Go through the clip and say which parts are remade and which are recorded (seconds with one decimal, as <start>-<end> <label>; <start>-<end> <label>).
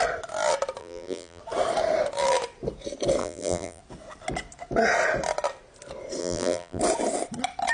0.0-0.8 recorded; 0.8-1.4 remade; 1.4-3.2 recorded; 3.2-3.8 remade; 3.8-6.2 recorded; 6.2-6.8 remade; 6.8-7.7 recorded